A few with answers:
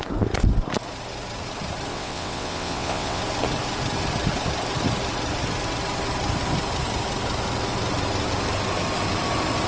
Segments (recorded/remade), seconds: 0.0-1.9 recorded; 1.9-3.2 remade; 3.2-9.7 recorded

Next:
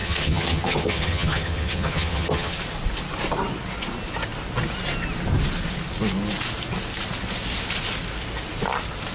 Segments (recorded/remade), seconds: 0.0-2.5 remade; 2.5-9.1 recorded